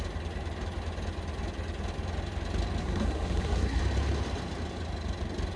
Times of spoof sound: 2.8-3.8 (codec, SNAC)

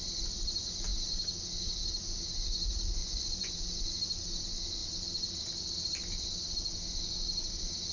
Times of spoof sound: 3.0-3.5 (vocoder, Vocos)

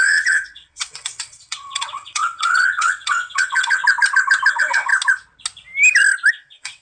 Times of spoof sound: 0.0-3.8 (vocoder, WaveNeXt); 4.5-4.9; 6.3-6.8

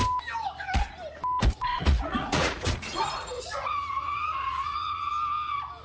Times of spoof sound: 1.6-5.1 (vocoder, Vocos)